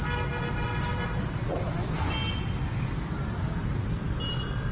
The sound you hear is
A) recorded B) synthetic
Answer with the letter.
A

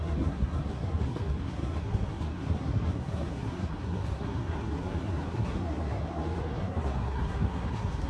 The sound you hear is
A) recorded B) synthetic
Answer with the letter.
B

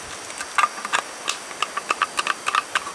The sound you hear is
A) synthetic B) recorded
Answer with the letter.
B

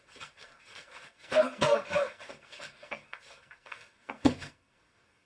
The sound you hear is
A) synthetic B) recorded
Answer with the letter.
A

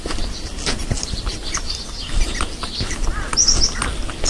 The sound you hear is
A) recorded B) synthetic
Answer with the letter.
A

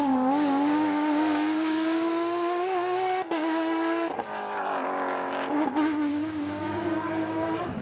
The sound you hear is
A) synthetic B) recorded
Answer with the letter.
A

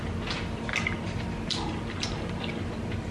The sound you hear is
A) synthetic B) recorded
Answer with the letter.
B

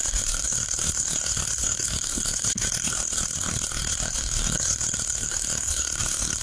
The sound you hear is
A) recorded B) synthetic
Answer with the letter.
B